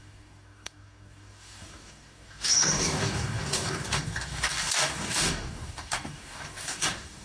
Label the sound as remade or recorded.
remade